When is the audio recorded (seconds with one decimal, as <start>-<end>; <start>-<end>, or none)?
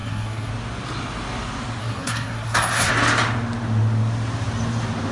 0.5-1.8; 2.9-5.1